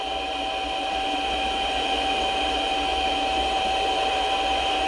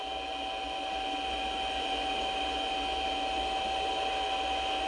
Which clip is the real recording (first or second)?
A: second